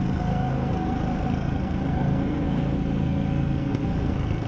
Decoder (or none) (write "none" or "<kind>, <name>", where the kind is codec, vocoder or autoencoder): codec, SNAC